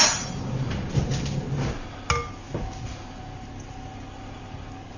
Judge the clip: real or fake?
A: real